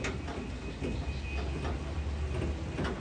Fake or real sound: real